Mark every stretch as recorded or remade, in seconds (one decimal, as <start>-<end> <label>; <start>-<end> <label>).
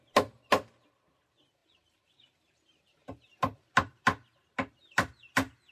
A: 0.0-1.6 recorded; 1.6-4.0 remade; 4.0-5.7 recorded